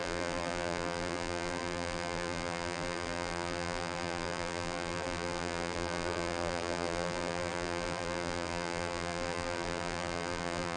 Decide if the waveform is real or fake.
fake